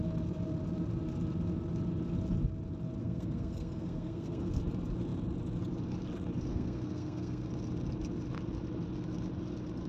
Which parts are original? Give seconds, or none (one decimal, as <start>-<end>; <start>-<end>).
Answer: 0.0-3.0; 4.6-6.5; 7.5-9.9